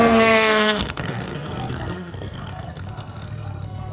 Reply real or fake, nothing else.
fake